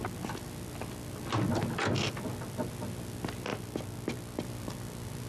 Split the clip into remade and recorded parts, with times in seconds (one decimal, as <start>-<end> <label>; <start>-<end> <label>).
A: 0.0-5.3 recorded